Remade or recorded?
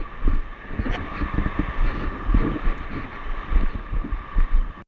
recorded